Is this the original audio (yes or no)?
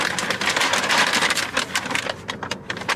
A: yes